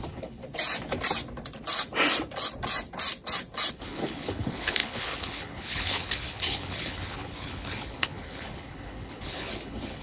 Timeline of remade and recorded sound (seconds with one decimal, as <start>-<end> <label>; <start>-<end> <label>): 0.0-0.4 remade; 0.4-3.7 recorded; 3.7-10.0 remade